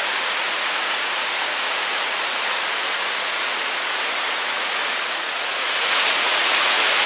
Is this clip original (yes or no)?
no